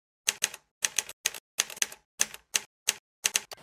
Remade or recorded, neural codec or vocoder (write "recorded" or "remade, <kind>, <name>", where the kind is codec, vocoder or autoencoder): recorded